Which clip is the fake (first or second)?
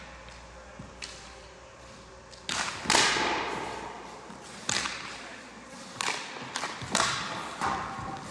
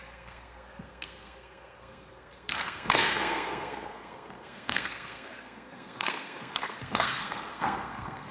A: second